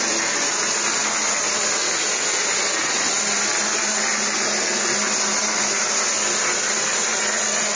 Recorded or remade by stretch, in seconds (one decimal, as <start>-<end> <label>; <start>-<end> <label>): 0.0-7.8 recorded